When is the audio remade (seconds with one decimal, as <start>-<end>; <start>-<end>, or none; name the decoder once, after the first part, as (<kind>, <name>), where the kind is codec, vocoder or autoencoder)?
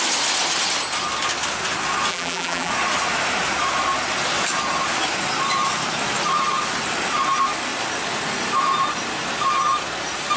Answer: 2.1-2.7 (vocoder, BigVGAN v2)